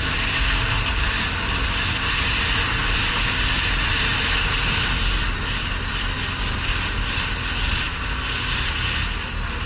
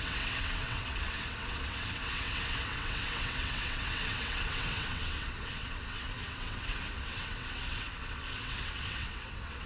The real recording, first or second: first